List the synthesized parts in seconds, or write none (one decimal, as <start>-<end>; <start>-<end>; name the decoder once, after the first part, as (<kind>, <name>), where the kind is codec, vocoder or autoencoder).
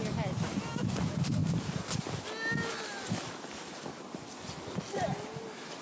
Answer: none